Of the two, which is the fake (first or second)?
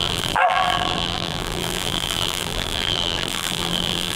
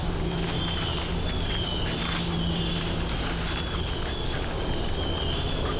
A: first